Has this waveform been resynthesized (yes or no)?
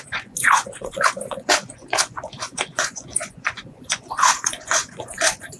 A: yes